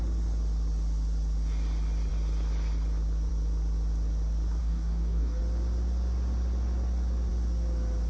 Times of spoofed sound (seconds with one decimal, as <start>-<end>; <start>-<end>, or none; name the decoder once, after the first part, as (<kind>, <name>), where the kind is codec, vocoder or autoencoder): 4.6-5.4 (codec, DAC)